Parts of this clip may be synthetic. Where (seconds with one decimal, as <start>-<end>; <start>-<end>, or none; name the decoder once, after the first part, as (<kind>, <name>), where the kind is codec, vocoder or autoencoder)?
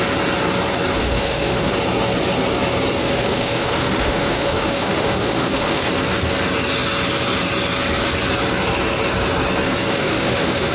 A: 1.0-1.7 (autoencoder, DAC-VAE); 3.0-5.9; 9.9-10.7